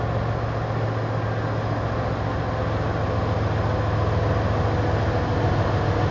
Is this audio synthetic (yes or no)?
no